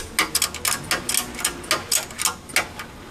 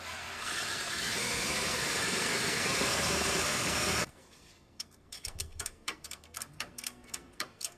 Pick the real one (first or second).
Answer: first